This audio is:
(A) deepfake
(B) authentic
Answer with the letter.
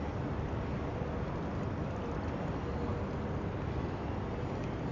B